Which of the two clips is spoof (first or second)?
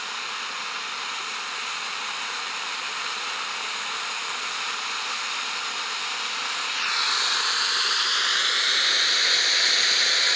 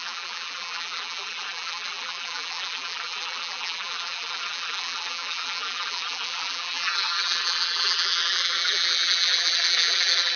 second